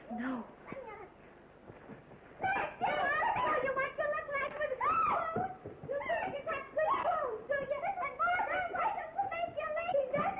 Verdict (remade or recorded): recorded